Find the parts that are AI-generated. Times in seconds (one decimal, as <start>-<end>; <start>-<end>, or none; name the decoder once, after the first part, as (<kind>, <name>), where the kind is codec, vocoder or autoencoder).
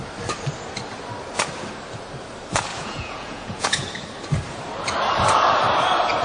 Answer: 2.7-3.9 (vocoder, Vocos)